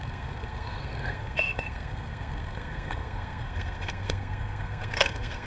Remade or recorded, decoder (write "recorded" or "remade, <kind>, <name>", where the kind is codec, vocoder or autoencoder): remade, codec, SNAC